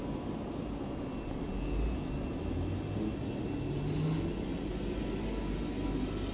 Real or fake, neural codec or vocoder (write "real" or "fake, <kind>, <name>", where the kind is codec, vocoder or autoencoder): real